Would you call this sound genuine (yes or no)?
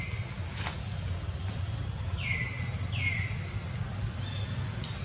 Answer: yes